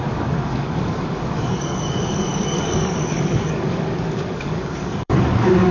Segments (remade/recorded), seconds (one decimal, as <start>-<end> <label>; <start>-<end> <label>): 0.0-5.7 remade